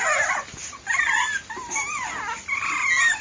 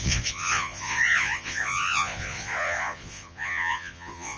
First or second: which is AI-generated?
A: second